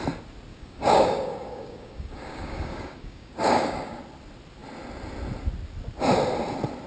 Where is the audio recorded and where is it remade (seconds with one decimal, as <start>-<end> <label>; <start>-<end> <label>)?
0.0-0.5 recorded; 0.5-4.0 remade; 4.0-6.9 recorded